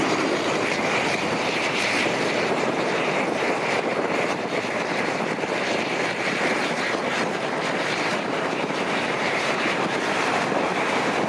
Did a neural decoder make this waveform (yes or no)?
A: yes